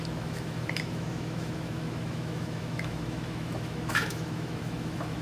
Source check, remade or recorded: remade